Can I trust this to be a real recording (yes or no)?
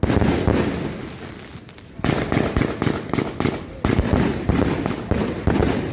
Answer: yes